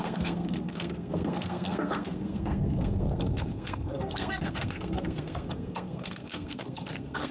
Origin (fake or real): fake